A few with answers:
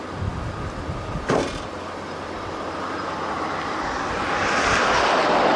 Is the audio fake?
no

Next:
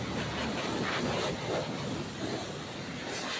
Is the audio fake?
no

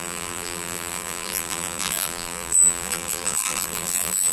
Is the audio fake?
yes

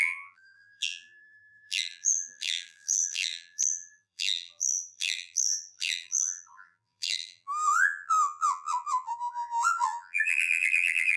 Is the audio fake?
yes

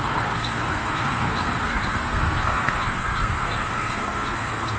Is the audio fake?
yes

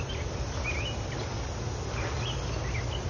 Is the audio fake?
no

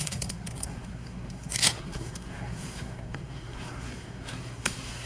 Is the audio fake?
yes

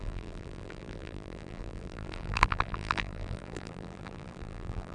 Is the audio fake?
yes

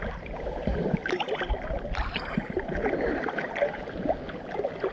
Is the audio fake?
no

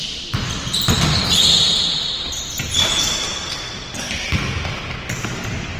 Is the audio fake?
no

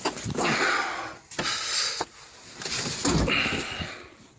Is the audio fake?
no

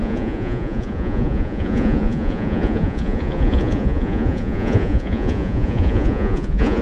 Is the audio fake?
yes